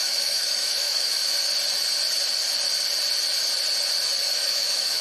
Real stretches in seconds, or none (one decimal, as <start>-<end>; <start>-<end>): 1.2-4.2